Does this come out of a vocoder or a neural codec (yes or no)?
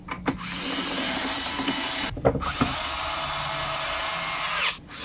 no